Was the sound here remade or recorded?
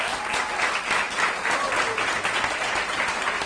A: recorded